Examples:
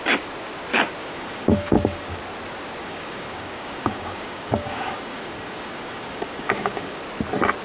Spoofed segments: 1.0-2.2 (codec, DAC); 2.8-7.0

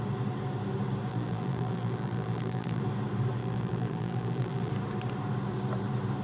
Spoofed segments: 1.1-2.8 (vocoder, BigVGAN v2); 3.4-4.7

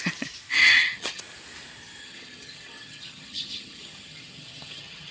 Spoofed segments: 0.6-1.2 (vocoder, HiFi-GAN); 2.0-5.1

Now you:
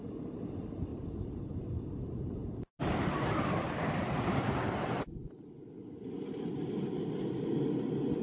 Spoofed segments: 0.9-1.9 (vocoder, BigVGAN v2); 2.4-7.3